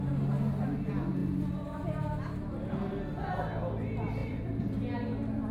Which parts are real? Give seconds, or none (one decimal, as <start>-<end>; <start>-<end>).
0.0-4.2; 4.8-5.5